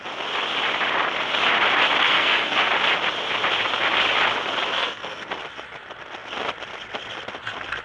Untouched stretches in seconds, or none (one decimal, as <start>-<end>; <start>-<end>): 0.0-2.0; 2.7-4.7; 5.3-7.8